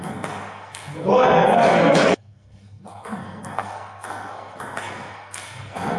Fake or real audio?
fake